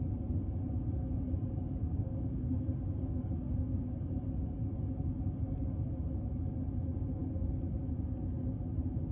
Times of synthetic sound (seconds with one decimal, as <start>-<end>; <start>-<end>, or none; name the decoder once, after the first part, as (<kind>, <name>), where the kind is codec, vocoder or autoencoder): 1.8-4.1 (codec, DAC)